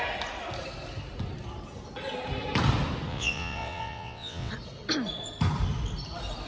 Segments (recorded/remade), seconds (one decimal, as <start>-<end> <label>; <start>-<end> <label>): 0.0-3.1 recorded; 3.1-4.5 remade; 4.5-6.5 recorded